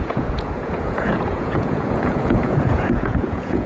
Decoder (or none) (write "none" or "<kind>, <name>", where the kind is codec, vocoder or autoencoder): vocoder, Vocos